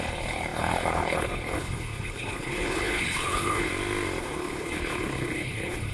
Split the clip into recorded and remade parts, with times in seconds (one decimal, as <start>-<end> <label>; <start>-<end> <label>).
0.0-3.7 remade; 3.7-4.2 recorded; 4.2-5.9 remade